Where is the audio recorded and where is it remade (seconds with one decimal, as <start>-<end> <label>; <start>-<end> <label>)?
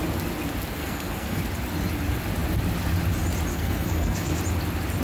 0.0-0.8 recorded; 0.8-1.4 remade; 1.4-3.5 recorded; 3.5-4.4 remade; 4.4-5.0 recorded